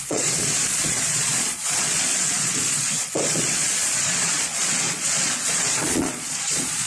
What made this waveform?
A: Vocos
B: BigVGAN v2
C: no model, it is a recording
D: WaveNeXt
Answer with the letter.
A